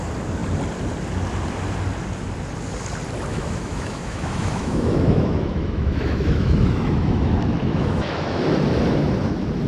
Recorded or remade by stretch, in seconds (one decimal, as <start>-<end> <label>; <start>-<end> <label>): 0.0-3.3 recorded; 3.3-8.4 remade; 8.4-9.7 recorded

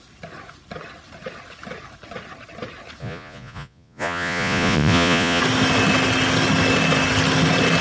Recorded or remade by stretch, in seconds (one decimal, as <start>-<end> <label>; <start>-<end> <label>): 0.0-3.0 recorded; 3.0-5.4 remade; 5.4-7.8 recorded

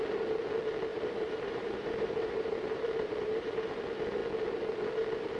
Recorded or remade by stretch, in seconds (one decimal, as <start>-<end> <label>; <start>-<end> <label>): 0.0-0.9 recorded; 0.9-3.7 remade; 3.7-5.4 recorded

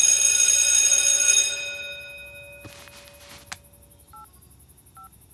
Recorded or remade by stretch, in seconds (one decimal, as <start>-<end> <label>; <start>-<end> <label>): 0.0-5.3 recorded

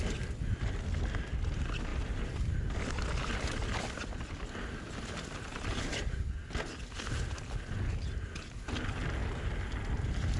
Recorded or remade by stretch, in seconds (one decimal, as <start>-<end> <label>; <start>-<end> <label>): 0.0-1.9 recorded; 1.9-2.6 remade; 2.6-5.5 recorded; 5.5-6.3 remade; 6.3-10.4 recorded

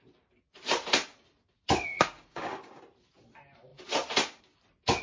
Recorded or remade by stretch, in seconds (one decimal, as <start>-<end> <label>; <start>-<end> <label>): 0.0-1.9 recorded; 1.9-2.8 remade; 2.8-5.0 recorded

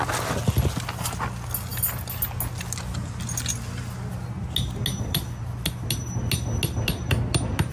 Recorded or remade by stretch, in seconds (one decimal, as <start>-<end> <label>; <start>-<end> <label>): 0.0-7.7 recorded

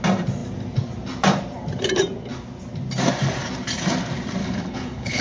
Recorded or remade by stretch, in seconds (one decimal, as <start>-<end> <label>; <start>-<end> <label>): 0.0-4.4 recorded; 4.4-5.2 remade